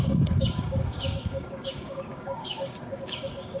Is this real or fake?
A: fake